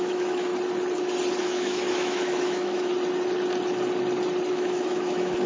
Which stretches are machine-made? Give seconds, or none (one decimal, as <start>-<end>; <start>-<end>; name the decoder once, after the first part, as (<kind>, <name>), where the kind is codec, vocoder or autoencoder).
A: 0.0-0.5 (autoencoder, DAC-VAE); 1.4-2.9; 4.5-5.5